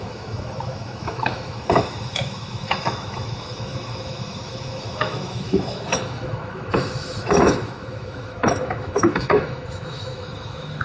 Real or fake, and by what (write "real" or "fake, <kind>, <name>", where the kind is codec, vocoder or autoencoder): fake, autoencoder, DAC-VAE